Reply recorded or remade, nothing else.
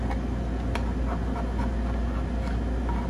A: recorded